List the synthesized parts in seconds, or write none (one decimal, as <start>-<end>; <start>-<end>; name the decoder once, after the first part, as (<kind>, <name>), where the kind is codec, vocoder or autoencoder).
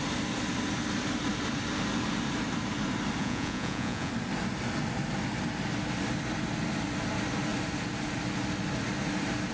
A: 3.2-4.1 (vocoder, Vocos)